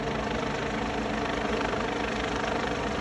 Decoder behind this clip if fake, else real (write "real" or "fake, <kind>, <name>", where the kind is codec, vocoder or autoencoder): real